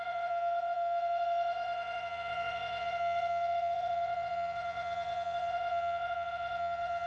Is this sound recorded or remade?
remade